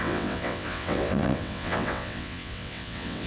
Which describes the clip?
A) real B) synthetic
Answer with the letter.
B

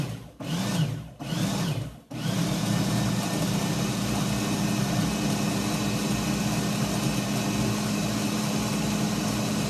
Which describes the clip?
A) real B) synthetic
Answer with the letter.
A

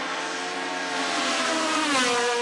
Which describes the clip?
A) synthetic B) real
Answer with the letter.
B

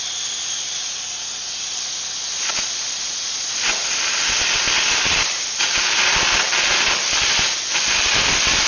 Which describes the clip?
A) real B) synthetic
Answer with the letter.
A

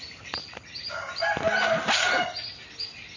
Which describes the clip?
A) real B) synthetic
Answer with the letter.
A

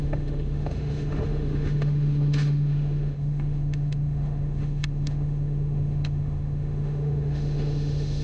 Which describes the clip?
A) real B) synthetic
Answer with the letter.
B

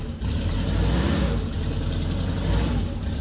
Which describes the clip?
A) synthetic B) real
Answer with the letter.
B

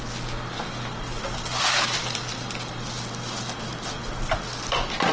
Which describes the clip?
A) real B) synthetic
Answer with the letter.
A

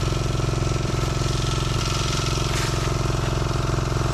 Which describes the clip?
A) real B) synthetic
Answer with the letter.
B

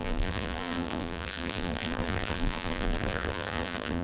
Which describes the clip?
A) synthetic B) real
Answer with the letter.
A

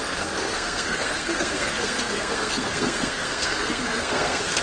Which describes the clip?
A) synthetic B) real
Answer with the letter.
A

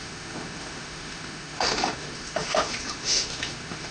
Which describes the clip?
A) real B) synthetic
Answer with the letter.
B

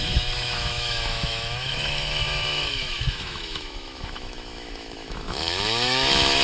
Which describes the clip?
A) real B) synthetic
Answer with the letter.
B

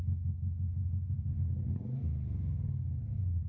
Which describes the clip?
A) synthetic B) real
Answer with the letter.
A